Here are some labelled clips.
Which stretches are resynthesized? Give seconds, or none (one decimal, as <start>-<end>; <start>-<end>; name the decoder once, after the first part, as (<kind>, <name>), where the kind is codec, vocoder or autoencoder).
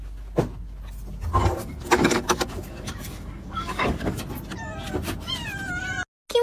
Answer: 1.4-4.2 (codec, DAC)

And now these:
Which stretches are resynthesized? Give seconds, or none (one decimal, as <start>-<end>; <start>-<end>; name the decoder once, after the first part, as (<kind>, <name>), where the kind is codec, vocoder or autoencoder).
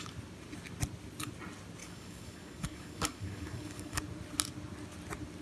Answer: 1.8-4.0 (codec, DAC)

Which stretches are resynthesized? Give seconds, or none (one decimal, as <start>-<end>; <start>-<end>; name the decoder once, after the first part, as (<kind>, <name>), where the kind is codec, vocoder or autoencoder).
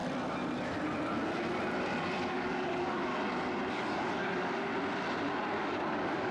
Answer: 2.3-3.1 (codec, DAC); 3.7-4.7; 5.6-6.3